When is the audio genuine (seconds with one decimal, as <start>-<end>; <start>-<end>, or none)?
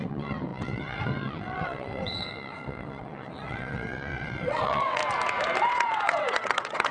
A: 5.0-5.6